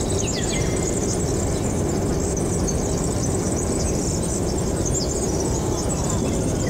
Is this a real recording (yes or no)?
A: yes